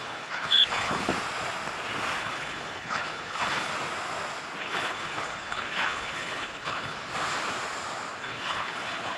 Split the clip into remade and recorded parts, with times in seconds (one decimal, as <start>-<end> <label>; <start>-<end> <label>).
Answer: 0.0-1.1 remade; 1.1-2.2 recorded; 2.2-3.7 remade; 3.7-4.6 recorded; 4.6-7.1 remade; 7.1-8.2 recorded; 8.2-9.2 remade